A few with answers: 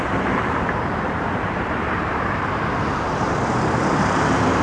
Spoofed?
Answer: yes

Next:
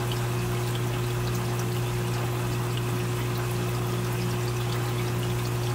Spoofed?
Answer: no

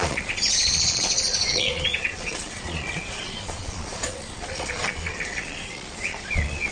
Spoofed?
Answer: yes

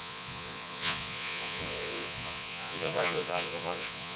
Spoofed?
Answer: yes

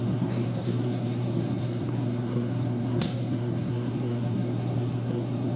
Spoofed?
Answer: yes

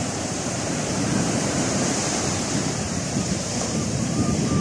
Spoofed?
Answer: yes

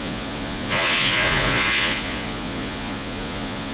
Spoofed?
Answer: yes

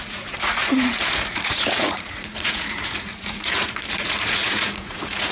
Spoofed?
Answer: yes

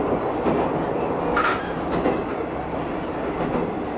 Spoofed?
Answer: no